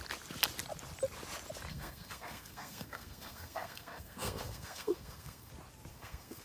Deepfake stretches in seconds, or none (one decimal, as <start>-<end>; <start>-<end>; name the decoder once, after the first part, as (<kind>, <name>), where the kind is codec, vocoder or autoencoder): 1.7-5.5 (codec, SNAC); 5.9-6.4